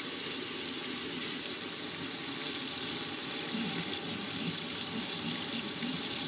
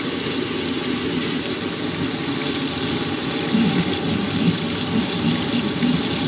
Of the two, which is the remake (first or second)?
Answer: first